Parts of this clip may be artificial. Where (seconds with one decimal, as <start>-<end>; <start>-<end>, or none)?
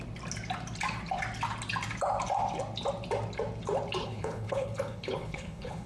4.0-5.9